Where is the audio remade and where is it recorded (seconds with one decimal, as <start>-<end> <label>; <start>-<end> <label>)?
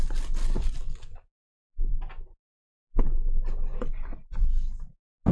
0.0-5.3 recorded